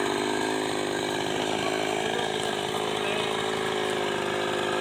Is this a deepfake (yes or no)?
no